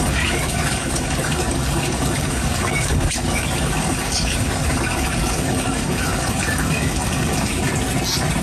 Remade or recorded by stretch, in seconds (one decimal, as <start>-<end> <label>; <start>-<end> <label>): 0.0-7.7 remade; 7.7-8.4 recorded